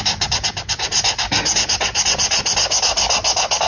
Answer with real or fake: real